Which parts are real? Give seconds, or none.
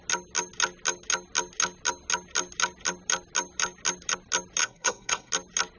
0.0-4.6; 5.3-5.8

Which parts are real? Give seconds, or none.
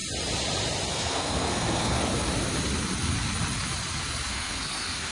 0.0-0.9; 2.0-4.3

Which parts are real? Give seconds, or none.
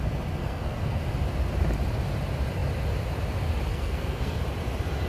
0.0-0.4; 1.0-3.7; 4.4-5.1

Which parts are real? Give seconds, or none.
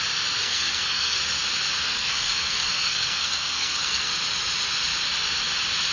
0.0-0.4; 1.2-1.8; 4.1-5.9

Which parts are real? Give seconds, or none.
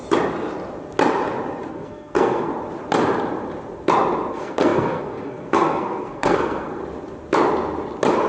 0.0-1.7; 2.5-4.3; 6.8-8.3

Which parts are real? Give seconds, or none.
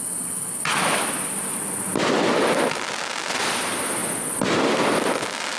0.0-5.6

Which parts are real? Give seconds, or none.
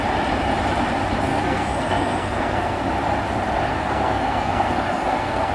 0.0-1.3; 2.8-3.7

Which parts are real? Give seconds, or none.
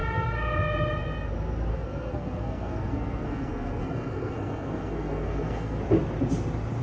0.0-1.7; 5.8-6.8